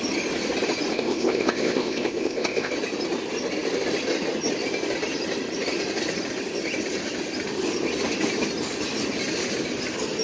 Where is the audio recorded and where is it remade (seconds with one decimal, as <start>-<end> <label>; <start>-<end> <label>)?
0.0-0.9 recorded; 0.9-2.7 remade; 2.7-10.2 recorded